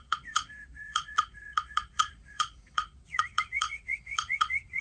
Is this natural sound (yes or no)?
no